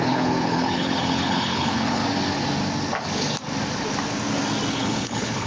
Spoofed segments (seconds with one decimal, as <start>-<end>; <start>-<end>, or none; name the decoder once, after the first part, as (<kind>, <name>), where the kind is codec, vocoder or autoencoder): 0.0-2.0 (codec, HILCodec); 4.7-5.5